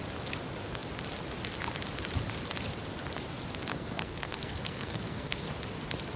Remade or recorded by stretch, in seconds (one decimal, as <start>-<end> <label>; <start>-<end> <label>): 0.0-3.7 recorded; 3.7-5.5 remade; 5.5-6.2 recorded